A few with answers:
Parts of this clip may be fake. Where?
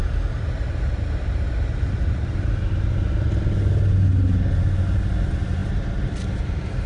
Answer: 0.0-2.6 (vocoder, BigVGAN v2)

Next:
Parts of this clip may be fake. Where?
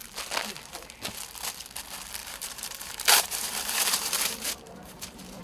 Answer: 2.2-5.4 (vocoder, BigVGAN v2)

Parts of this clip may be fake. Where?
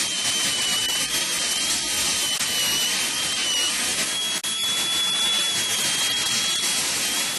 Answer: none